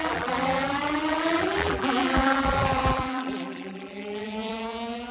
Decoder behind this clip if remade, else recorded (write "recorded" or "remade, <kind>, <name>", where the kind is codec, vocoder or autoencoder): remade, vocoder, BigVGAN v2